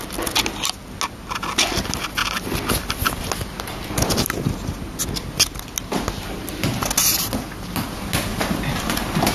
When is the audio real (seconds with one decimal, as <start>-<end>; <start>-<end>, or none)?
0.0-8.3